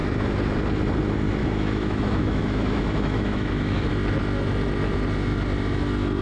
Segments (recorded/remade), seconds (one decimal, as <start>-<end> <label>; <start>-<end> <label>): 0.0-1.4 recorded; 1.4-3.9 remade; 3.9-6.2 recorded